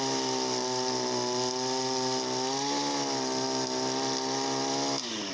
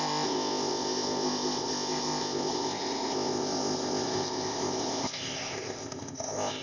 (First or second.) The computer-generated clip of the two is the second